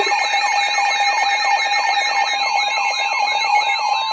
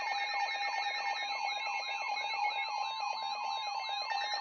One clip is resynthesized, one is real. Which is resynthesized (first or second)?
first